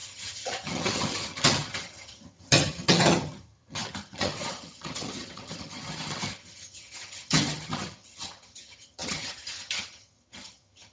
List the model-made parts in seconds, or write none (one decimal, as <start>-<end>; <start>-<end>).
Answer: 0.0-10.9